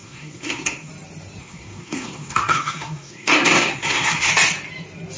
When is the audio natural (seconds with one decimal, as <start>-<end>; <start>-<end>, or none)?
0.9-1.4; 4.3-5.2